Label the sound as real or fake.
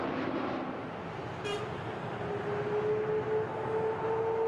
real